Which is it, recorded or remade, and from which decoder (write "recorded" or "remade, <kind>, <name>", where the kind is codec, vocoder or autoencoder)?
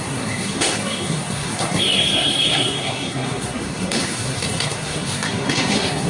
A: remade, codec, SNAC